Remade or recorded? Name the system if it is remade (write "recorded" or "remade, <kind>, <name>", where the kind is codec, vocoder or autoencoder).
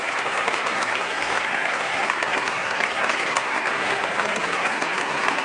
remade, codec, SNAC